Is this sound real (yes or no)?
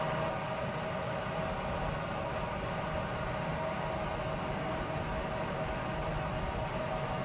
yes